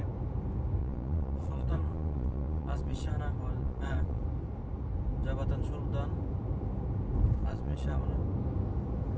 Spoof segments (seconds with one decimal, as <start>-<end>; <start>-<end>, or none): 0.8-3.1; 3.6-4.2; 7.4-8.0